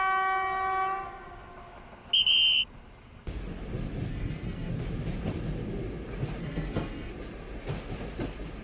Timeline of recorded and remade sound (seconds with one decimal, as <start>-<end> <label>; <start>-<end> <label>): 0.0-4.1 recorded; 4.1-4.7 remade; 4.7-6.4 recorded; 6.4-7.1 remade; 7.1-8.6 recorded